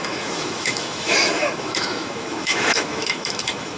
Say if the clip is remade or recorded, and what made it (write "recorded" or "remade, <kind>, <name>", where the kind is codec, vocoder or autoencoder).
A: remade, autoencoder, DAC-VAE